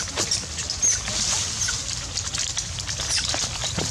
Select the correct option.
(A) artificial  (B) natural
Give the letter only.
B